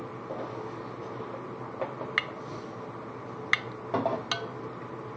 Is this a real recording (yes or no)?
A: yes